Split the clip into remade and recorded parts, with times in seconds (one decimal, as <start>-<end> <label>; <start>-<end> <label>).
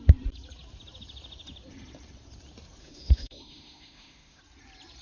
0.0-2.8 recorded; 2.8-4.4 remade; 4.4-5.0 recorded